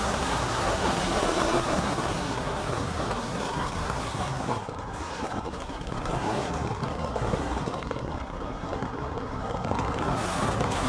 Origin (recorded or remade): remade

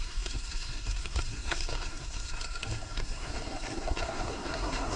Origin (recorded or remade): remade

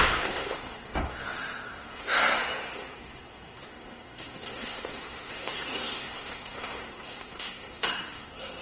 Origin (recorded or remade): remade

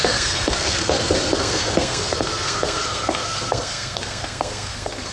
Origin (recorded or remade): remade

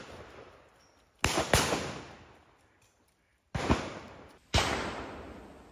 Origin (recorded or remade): recorded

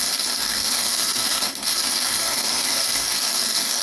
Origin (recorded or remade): remade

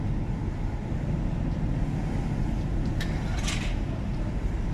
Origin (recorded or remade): recorded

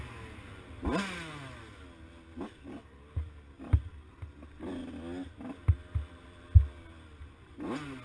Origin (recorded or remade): recorded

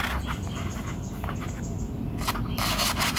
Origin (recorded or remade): recorded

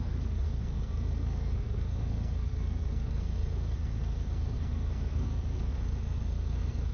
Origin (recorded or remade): remade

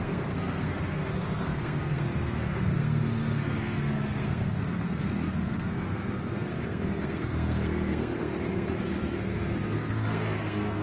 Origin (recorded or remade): remade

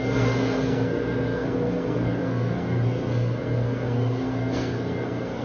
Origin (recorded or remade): remade